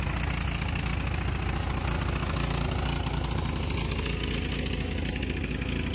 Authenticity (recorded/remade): recorded